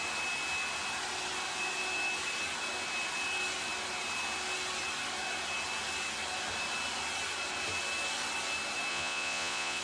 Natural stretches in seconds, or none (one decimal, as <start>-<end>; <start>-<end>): 0.0-8.9